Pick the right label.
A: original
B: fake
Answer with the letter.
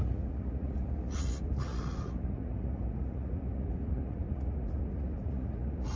B